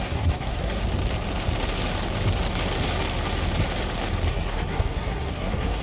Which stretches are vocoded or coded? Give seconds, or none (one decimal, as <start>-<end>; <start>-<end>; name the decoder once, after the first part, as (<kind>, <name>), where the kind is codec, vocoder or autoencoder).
0.0-0.8 (codec, SNAC); 4.3-5.8